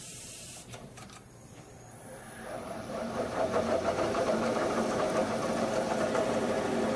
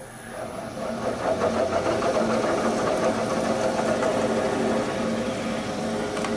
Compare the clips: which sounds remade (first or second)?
first